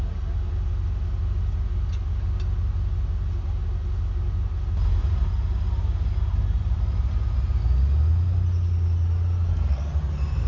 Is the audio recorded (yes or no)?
yes